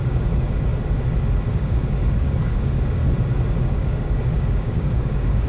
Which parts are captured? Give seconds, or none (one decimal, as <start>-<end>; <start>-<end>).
0.7-1.5; 3.0-3.6